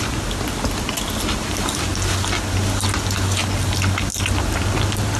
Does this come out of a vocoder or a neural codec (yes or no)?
no